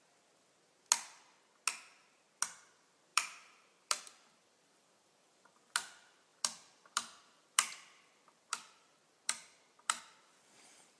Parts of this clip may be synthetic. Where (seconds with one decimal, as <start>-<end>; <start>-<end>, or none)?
3.1-5.5; 6.3-10.0